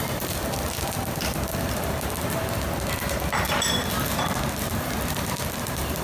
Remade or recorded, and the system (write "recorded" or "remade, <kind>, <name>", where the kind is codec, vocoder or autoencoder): remade, vocoder, BigVGAN v2